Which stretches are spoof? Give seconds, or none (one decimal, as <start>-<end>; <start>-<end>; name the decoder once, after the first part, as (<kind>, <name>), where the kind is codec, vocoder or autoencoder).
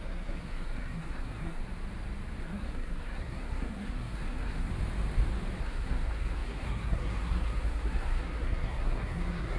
0.0-1.6 (codec, SNAC); 2.4-4.7; 5.6-9.6